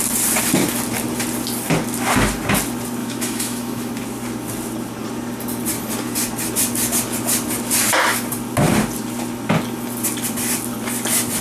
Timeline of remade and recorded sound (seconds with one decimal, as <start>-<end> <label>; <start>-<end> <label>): 0.0-3.0 recorded; 3.0-3.9 remade; 3.9-11.4 recorded

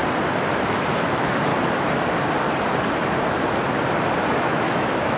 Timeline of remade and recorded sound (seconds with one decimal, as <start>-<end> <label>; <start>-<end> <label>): 0.0-0.9 recorded; 0.9-1.5 remade; 1.5-4.3 recorded; 4.3-5.2 remade

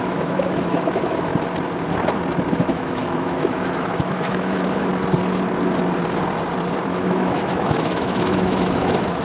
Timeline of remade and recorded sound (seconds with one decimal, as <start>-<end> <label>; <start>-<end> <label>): 0.0-1.3 remade; 1.3-2.5 recorded; 2.5-4.9 remade; 4.9-6.8 recorded; 6.8-9.2 remade

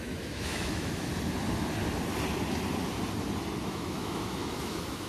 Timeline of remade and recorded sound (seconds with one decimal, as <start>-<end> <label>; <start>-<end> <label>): 0.0-1.1 remade; 1.1-3.6 recorded; 3.6-5.1 remade

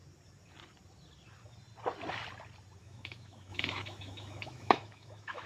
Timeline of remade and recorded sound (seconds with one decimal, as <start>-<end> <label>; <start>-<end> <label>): 0.0-2.8 recorded; 2.8-5.5 remade